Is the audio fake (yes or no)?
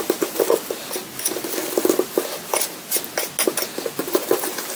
no